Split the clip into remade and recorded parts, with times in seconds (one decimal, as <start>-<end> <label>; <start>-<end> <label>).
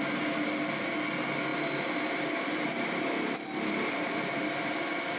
0.0-5.2 recorded